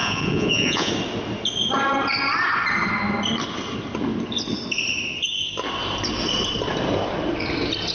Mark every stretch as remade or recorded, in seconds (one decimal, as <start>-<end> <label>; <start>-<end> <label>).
0.0-0.9 remade; 0.9-7.9 recorded